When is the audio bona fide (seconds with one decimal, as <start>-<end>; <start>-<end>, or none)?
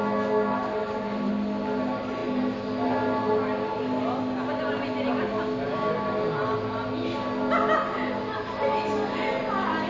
0.0-0.8; 1.3-9.9